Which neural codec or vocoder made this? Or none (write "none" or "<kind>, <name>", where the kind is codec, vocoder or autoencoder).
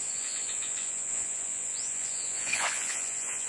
vocoder, Vocos